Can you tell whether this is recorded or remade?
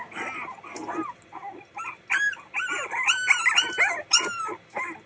recorded